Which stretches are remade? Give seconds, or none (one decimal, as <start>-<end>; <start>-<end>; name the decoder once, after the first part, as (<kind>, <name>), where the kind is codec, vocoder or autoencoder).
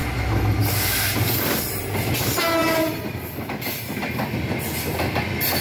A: none